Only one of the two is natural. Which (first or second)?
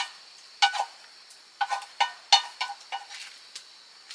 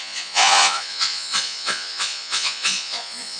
first